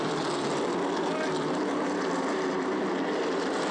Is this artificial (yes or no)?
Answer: yes